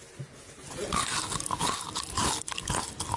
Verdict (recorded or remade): recorded